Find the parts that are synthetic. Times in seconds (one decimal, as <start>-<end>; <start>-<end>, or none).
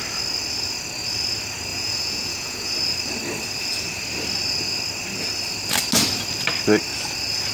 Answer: 1.7-2.7